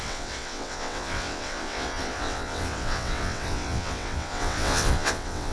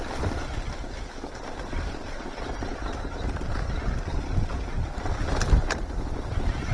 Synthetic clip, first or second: first